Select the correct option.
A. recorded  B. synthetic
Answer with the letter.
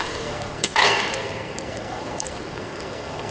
B